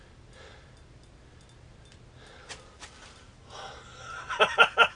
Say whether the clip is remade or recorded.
recorded